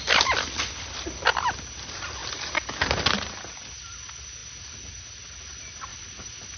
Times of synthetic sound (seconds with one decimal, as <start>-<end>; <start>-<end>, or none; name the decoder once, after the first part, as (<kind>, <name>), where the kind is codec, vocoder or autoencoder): 5.9-6.6 (vocoder, BigVGAN v2)